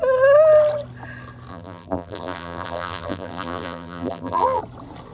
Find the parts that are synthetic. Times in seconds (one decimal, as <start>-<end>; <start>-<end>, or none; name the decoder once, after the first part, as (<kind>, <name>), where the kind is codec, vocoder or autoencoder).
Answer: 1.5-4.6 (vocoder, BigVGAN v2)